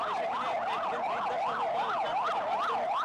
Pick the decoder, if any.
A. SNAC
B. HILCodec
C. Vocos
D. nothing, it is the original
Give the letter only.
D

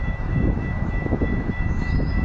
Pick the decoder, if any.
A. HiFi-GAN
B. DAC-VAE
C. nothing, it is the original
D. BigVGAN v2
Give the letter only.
B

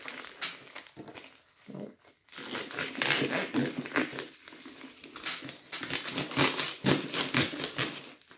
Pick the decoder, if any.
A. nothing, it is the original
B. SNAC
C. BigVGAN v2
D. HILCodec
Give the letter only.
A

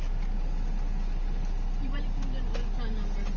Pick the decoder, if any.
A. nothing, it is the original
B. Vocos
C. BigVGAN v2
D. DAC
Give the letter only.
A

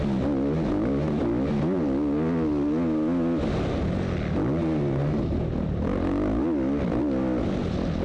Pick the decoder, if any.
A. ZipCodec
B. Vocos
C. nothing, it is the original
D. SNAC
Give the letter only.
C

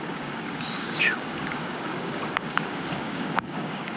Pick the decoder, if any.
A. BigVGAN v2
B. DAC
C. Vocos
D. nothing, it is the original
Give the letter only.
B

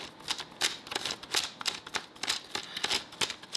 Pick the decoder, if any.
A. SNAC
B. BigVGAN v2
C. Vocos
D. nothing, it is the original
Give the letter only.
D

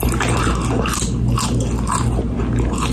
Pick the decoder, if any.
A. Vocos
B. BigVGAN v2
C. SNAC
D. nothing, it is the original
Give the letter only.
D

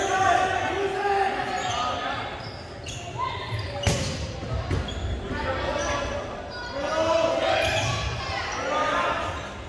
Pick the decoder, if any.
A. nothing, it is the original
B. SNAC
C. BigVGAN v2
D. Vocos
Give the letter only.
A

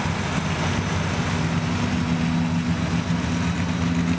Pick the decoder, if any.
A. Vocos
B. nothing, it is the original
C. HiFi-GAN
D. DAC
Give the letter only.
B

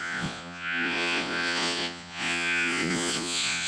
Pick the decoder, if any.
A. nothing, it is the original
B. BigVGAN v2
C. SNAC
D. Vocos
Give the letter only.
D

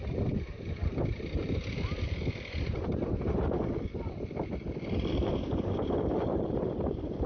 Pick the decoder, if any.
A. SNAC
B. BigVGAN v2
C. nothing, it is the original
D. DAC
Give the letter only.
C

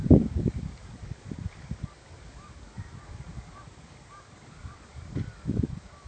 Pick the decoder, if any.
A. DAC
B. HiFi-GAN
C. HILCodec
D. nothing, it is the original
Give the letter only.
A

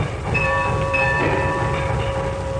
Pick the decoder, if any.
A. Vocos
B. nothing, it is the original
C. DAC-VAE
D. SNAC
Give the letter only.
B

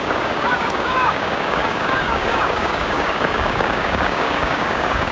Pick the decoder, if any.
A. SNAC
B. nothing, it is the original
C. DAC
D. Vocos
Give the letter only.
C